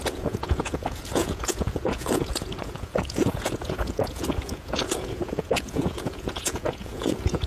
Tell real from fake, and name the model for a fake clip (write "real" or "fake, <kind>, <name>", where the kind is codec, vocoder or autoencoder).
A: fake, vocoder, Vocos